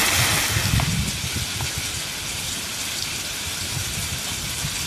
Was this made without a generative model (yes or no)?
yes